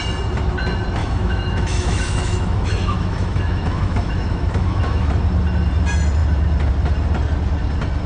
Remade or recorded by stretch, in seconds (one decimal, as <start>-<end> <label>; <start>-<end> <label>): 0.0-1.0 recorded; 1.0-5.1 remade; 5.1-8.1 recorded